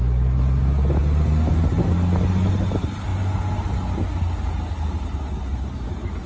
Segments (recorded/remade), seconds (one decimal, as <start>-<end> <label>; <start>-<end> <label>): 0.0-6.3 recorded